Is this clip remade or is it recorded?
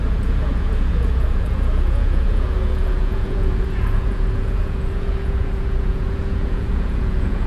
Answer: remade